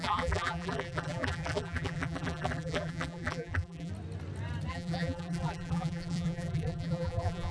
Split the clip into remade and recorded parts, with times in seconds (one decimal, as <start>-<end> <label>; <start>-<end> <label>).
0.0-3.9 remade; 3.9-4.7 recorded; 4.7-7.5 remade